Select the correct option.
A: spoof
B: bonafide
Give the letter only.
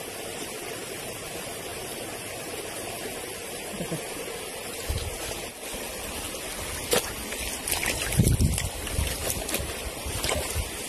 B